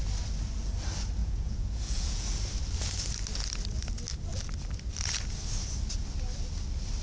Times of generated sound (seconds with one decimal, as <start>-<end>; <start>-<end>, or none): 1.2-2.4